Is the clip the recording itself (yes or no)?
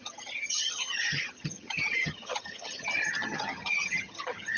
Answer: no